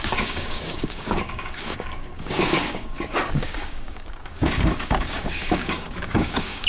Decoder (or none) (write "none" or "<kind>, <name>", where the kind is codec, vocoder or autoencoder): codec, DAC